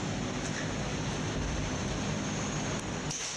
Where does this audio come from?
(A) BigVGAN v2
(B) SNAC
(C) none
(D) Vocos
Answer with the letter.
C